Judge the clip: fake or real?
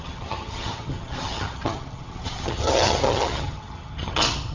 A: fake